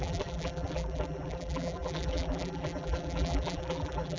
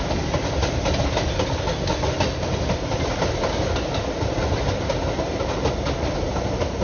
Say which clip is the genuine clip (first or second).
second